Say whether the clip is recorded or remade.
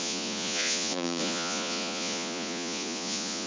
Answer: remade